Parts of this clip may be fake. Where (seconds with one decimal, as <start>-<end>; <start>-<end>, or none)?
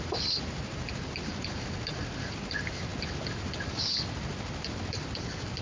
none